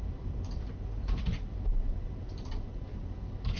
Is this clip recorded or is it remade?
remade